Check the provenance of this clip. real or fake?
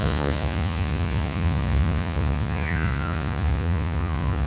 fake